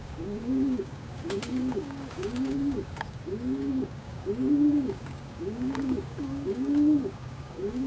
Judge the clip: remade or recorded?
remade